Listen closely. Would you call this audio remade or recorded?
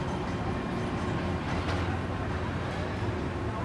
recorded